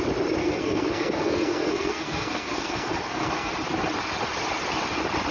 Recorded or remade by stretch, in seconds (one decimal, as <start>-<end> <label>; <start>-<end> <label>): 0.0-0.4 recorded; 0.4-3.5 remade; 3.5-5.3 recorded